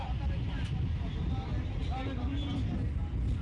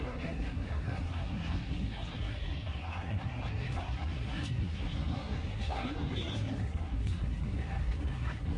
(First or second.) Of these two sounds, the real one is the first